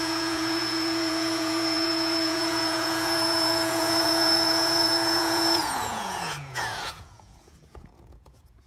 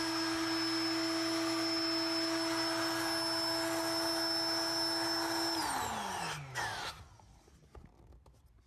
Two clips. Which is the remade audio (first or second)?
first